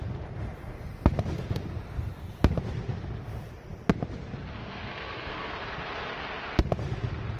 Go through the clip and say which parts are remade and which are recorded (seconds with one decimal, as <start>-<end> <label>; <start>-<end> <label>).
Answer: 0.0-4.6 recorded; 4.6-5.5 remade; 5.5-7.4 recorded